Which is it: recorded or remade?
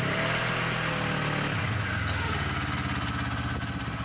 recorded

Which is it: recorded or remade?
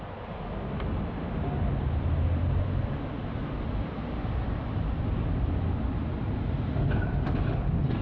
recorded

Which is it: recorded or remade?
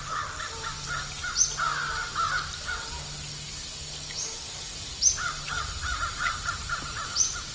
recorded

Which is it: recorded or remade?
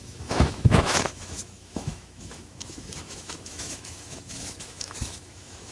remade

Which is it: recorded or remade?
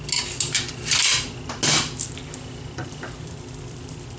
recorded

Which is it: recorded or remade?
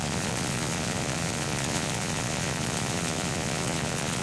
remade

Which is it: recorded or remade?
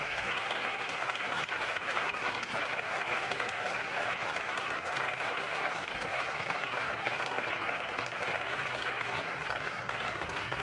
remade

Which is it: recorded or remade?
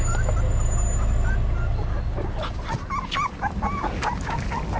recorded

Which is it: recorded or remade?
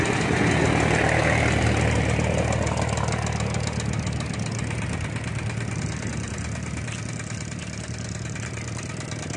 recorded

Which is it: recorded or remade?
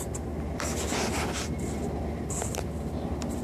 recorded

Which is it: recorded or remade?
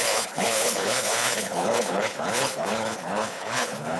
remade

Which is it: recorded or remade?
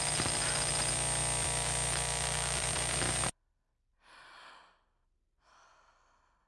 recorded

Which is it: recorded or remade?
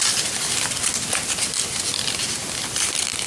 recorded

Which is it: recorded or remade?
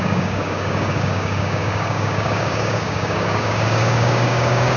remade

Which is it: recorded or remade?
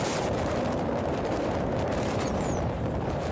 remade